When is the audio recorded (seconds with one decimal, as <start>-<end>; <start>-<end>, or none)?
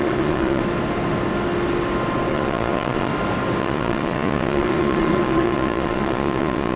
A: 0.6-2.3; 3.1-3.6